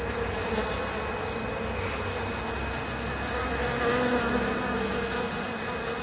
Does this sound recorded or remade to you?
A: recorded